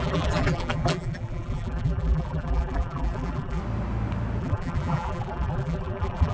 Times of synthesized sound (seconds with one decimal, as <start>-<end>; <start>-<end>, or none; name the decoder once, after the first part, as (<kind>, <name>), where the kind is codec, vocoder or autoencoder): 0.0-3.6 (vocoder, BigVGAN v2); 4.4-6.3